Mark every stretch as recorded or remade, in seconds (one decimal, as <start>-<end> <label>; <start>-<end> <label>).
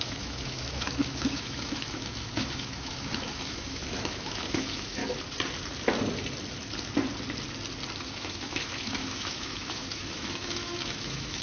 0.0-5.0 remade; 5.0-8.0 recorded; 8.0-11.4 remade